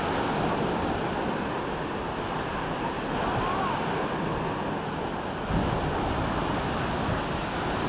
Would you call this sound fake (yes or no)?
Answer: no